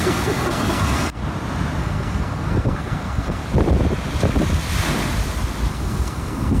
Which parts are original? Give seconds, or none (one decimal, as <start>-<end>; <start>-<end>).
1.2-1.8; 3.4-5.7